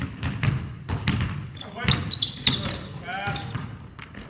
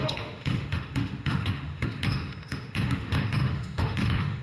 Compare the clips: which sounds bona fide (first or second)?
first